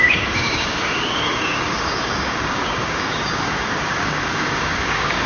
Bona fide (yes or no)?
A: no